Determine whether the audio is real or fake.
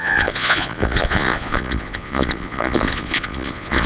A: fake